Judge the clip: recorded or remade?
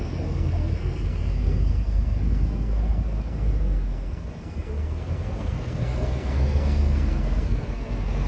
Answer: remade